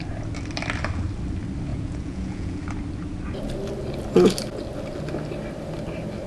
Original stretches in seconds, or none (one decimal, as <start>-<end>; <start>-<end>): 0.0-1.7; 2.6-6.3